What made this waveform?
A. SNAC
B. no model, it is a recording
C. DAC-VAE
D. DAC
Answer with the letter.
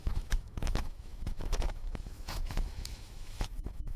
C